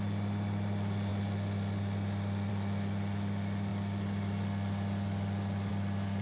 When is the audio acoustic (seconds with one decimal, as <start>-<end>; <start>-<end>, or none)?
0.0-6.2